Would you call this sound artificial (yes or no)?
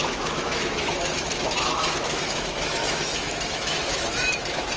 yes